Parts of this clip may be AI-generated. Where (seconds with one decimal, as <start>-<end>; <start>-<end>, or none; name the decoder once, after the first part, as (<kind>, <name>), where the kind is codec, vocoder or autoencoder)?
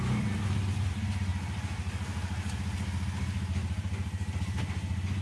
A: none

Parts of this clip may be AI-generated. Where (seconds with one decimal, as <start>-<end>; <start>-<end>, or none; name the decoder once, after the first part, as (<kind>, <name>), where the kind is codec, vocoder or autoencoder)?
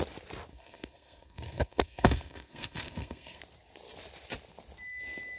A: 0.5-3.4 (codec, SNAC)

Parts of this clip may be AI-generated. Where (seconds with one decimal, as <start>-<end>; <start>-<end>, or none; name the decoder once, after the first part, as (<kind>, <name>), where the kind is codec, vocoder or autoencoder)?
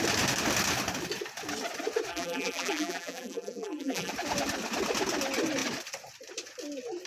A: 2.1-4.1 (vocoder, BigVGAN v2)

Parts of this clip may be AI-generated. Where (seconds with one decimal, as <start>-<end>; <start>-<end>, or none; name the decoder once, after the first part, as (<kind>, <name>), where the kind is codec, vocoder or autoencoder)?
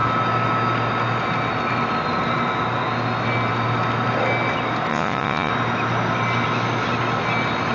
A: 4.9-5.5 (vocoder, Vocos)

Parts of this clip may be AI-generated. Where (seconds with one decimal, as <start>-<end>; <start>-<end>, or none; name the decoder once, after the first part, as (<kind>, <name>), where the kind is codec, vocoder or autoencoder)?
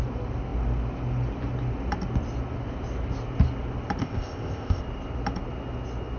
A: 4.0-4.8 (codec, ZipCodec)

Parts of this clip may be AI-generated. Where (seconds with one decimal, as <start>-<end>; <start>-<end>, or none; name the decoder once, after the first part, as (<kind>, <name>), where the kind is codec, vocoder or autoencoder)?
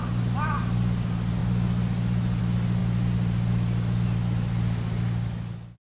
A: none